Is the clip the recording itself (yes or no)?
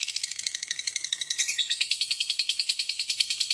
no